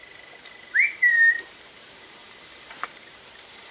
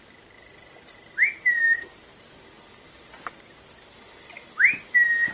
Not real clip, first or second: first